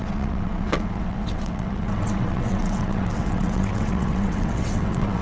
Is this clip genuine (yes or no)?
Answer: no